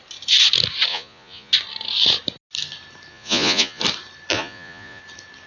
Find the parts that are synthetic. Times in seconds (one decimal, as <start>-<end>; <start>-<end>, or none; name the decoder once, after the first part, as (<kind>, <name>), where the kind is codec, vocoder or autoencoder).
0.9-1.5 (vocoder, Vocos); 3.1-3.8; 4.3-5.0

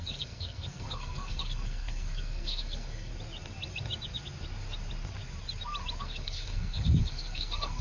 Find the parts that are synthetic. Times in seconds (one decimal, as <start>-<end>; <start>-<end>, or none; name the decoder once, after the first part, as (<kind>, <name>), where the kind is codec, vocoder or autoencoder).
0.0-3.1 (codec, SNAC); 6.0-7.8

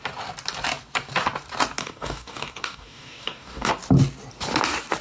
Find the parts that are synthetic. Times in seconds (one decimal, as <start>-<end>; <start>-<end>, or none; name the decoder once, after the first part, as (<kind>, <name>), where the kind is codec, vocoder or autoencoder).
1.8-3.7 (codec, DAC)

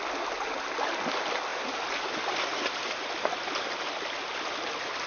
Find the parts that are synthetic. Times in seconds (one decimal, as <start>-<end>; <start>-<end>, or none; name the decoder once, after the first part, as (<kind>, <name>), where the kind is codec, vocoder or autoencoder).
none

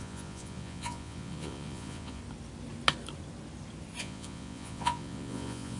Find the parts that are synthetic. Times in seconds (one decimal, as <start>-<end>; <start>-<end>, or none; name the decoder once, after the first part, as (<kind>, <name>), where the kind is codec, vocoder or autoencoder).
0.0-2.2 (vocoder, Vocos); 4.0-5.8

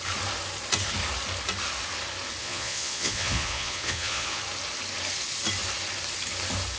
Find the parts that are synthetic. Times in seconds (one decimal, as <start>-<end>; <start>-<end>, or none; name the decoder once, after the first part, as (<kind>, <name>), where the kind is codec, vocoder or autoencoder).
2.4-4.4 (vocoder, Vocos)

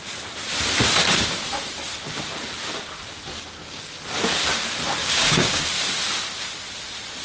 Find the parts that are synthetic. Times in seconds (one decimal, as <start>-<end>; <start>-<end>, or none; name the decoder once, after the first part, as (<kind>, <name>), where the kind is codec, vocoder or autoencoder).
3.3-4.0 (codec, DAC); 5.0-5.6